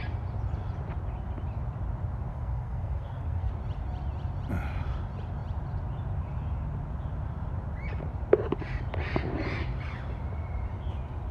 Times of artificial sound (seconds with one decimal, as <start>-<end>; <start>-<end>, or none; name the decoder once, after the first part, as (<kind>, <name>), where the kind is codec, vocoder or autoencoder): 2.3-3.5 (codec, SNAC)

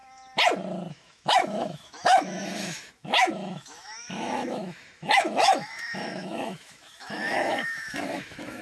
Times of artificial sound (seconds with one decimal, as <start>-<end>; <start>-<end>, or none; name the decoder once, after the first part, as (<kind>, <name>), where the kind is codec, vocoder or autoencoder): 0.9-8.6 (autoencoder, DAC-VAE)

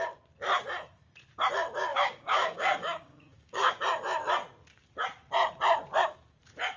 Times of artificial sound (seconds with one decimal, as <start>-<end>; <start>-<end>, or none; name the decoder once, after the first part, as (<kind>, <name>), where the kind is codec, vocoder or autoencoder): 1.9-3.8 (codec, DAC)

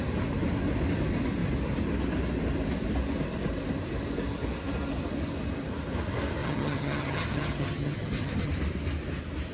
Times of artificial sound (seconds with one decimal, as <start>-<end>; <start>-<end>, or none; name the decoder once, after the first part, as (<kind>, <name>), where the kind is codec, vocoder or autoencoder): 6.4-8.5 (vocoder, HiFi-GAN)

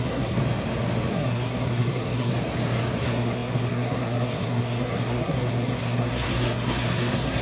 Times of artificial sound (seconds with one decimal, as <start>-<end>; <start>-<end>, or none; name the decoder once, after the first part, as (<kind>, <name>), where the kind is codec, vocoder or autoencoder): 0.0-0.4 (codec, SNAC); 1.1-2.3; 3.0-7.4

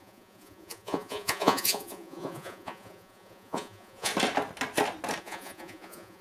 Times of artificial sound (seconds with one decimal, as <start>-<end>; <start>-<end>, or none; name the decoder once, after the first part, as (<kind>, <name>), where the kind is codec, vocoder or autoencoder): 0.0-4.1 (vocoder, Vocos); 5.2-6.2

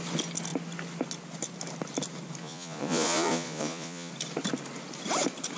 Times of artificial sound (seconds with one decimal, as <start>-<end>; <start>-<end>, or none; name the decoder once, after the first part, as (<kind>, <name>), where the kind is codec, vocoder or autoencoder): 2.4-4.1 (vocoder, Vocos)

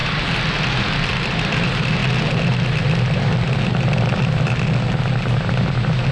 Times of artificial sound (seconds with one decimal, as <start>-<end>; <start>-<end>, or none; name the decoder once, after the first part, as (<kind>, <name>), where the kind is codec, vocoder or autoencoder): none